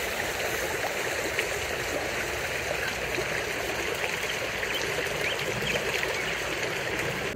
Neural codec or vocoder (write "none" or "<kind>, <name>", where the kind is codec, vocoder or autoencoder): none